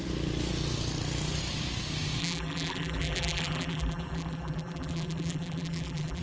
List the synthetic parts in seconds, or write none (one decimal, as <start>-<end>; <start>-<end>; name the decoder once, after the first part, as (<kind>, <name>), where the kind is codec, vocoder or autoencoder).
2.2-6.2 (vocoder, BigVGAN v2)